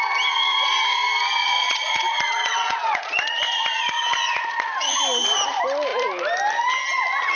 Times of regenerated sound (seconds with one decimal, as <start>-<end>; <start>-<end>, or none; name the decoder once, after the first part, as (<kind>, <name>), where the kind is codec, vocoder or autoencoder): 1.4-5.0 (vocoder, Vocos)